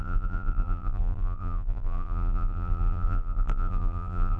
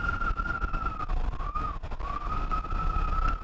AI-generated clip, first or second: first